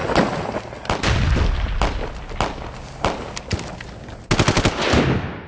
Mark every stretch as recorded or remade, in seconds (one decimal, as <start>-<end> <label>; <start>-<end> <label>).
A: 0.0-5.5 recorded